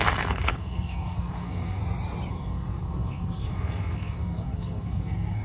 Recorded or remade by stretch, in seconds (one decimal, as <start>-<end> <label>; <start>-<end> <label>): 0.0-1.8 remade; 1.8-2.3 recorded; 2.3-5.4 remade